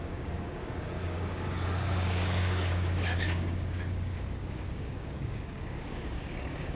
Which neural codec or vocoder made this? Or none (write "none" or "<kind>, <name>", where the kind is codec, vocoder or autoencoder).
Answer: codec, DAC